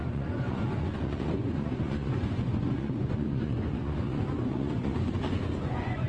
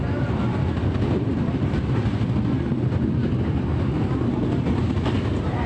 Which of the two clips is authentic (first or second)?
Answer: second